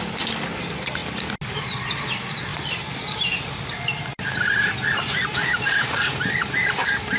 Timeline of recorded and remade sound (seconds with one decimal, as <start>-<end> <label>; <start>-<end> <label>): 0.0-5.3 recorded; 5.3-6.0 remade; 6.0-7.2 recorded